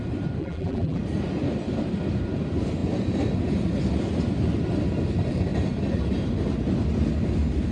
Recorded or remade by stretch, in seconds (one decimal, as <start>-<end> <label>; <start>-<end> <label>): 0.0-0.4 recorded; 0.4-1.0 remade; 1.0-7.7 recorded